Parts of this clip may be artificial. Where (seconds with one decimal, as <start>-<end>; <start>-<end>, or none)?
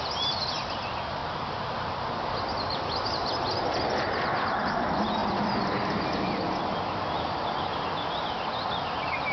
none